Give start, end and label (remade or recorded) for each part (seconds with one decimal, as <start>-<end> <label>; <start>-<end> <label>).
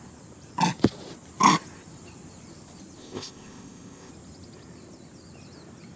0.0-3.0 recorded; 3.0-4.1 remade; 4.1-6.0 recorded